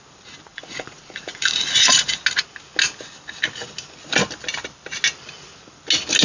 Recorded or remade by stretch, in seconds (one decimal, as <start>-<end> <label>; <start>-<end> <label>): 0.0-0.5 recorded; 0.5-2.2 remade; 2.2-6.2 recorded